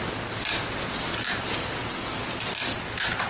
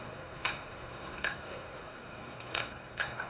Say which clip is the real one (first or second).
first